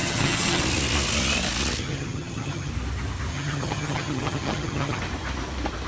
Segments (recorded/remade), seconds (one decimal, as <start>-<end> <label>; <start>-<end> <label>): 0.0-0.6 remade; 0.6-1.8 recorded; 1.8-2.7 remade; 2.7-3.3 recorded; 3.3-5.0 remade; 5.0-5.9 recorded